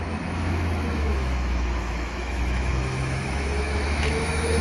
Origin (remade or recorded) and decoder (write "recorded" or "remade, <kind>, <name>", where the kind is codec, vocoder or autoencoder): remade, autoencoder, DAC-VAE